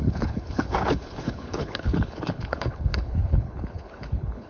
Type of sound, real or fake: fake